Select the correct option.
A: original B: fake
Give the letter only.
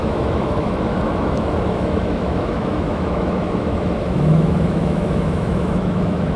B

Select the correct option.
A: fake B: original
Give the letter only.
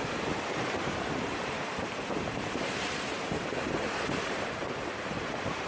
A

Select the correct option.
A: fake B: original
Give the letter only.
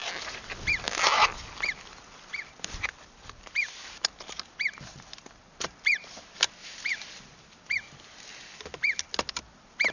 B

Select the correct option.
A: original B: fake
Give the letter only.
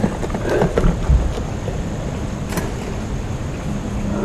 A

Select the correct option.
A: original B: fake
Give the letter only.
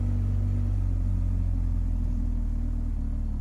A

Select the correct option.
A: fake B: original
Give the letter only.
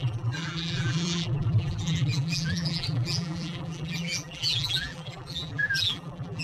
A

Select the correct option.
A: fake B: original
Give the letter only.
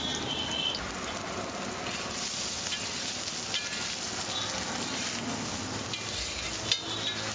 B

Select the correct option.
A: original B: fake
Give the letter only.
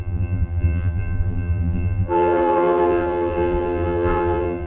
B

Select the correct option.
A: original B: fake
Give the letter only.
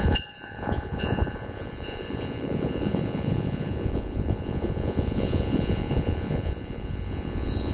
B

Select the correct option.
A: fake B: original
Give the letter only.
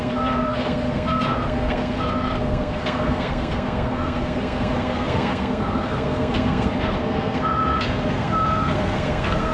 A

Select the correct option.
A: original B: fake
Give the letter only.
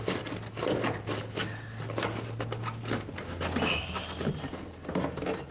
A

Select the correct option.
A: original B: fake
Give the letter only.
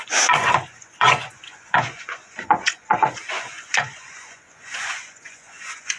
B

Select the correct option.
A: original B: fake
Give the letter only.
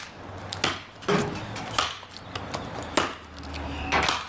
A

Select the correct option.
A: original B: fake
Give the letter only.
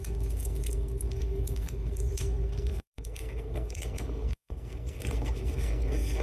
B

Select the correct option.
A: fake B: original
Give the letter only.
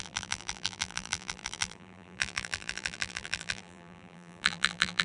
A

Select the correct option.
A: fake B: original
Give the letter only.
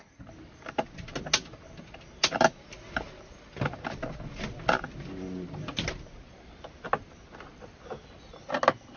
B